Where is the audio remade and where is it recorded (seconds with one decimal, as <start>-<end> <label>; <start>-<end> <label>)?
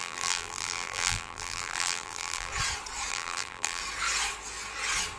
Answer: 0.0-2.5 remade; 2.5-3.1 recorded; 3.1-3.8 remade; 3.8-5.2 recorded